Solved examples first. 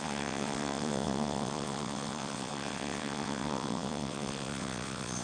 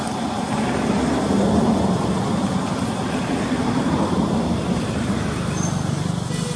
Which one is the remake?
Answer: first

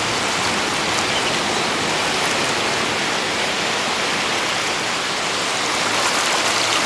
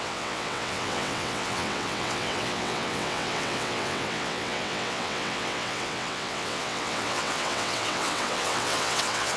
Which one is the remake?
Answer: second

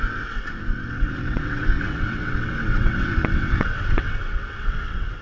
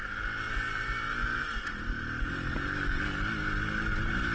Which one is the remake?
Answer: first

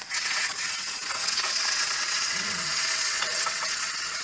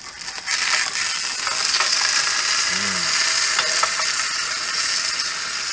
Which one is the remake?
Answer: first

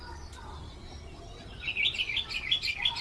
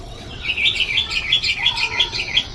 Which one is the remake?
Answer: second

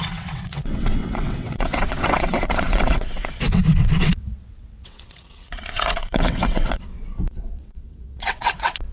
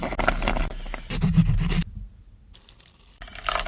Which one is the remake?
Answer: first